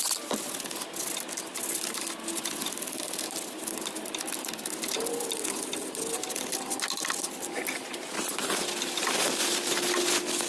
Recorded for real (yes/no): yes